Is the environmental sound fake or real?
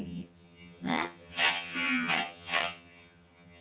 fake